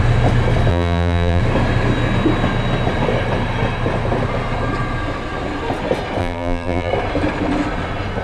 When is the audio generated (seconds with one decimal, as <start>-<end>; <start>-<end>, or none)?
0.7-1.4; 6.2-6.9